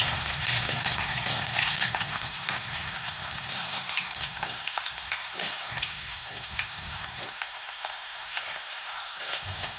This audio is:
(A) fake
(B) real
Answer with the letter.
A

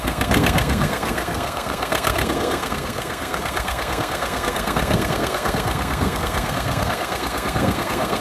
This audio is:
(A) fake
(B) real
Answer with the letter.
A